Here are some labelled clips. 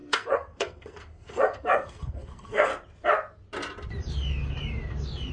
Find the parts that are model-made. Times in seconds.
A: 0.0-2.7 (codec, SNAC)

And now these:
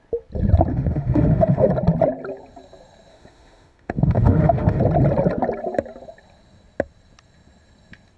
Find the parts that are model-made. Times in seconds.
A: 0.7-1.7 (autoencoder, DAC-VAE); 3.1-4.8

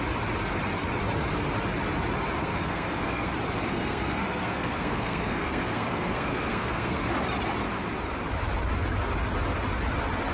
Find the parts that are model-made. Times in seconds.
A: 2.4-3.3 (codec, SNAC); 3.7-7.0

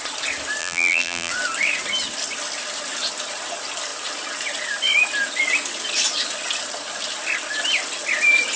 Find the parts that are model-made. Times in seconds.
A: 0.6-1.3 (vocoder, BigVGAN v2)